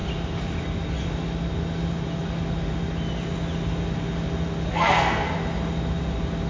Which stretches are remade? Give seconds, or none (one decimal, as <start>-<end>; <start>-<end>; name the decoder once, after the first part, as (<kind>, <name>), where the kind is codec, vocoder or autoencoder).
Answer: 4.7-5.3 (codec, SNAC)